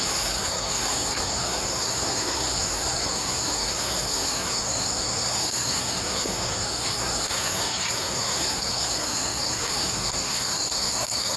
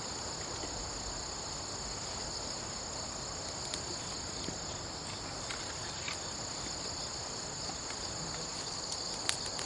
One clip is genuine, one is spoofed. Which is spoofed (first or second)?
first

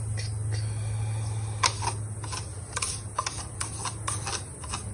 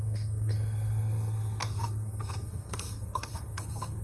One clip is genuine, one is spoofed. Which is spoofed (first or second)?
second